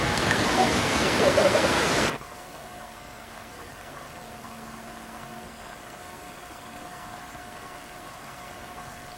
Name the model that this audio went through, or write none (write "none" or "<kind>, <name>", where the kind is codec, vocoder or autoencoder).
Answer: codec, SNAC